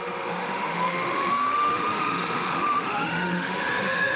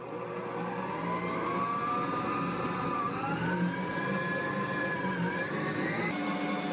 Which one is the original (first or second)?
second